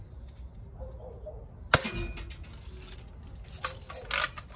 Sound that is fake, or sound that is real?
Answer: real